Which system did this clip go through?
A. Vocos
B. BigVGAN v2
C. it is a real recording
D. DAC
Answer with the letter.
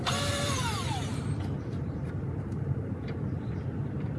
B